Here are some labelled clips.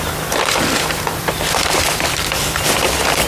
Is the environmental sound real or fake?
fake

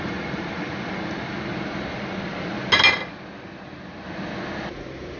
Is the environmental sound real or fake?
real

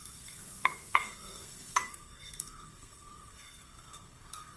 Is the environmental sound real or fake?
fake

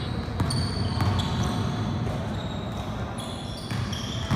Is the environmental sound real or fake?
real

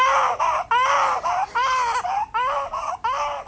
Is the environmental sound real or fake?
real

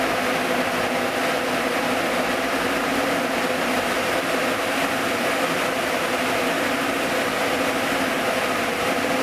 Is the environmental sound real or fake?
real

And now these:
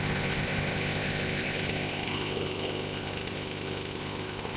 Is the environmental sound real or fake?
fake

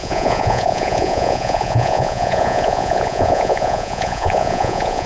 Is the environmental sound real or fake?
fake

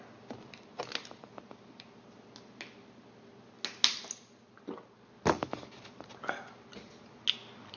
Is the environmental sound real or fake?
real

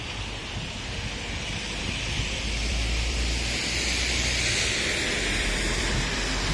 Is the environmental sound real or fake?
fake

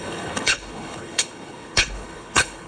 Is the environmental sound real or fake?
fake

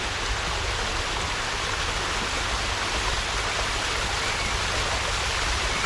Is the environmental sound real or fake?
real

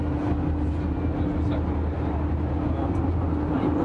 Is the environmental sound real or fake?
real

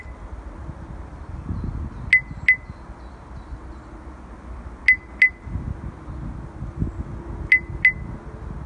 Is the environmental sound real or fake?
real